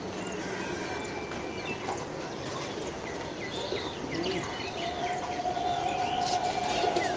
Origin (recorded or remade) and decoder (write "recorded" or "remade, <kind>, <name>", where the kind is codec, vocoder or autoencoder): recorded